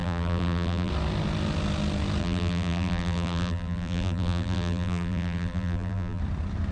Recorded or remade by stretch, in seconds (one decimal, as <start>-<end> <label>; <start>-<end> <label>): 0.0-0.9 remade; 0.9-2.2 recorded; 2.2-6.2 remade; 6.2-6.7 recorded